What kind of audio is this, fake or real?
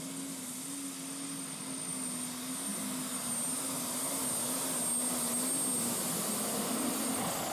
real